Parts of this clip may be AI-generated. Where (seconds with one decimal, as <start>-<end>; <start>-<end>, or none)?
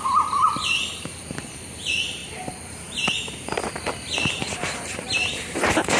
0.0-2.2; 4.3-6.0